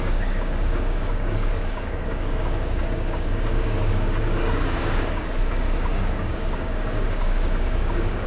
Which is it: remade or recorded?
remade